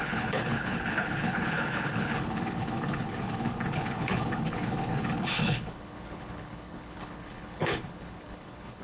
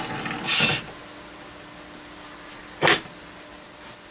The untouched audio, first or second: second